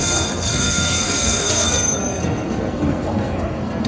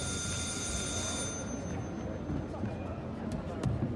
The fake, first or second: first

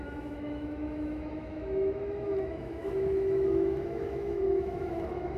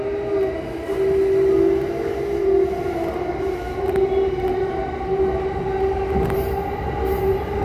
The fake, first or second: first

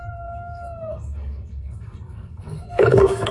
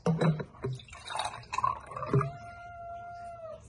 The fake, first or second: first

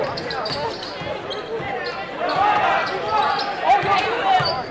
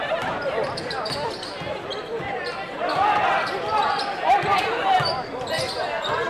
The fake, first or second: second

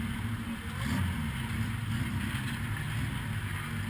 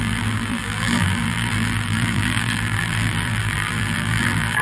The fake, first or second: second